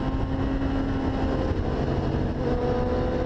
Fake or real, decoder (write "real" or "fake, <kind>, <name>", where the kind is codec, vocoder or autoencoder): real